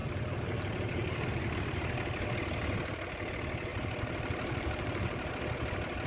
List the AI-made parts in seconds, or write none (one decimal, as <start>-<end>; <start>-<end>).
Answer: 0.0-1.3; 3.7-5.3